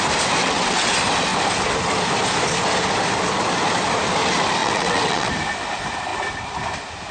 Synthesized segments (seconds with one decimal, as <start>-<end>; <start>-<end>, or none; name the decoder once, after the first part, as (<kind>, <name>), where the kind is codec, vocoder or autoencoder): 0.4-0.9 (vocoder, WaveNeXt); 4.6-5.3